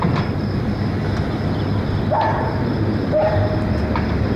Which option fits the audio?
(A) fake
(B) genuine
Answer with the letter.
B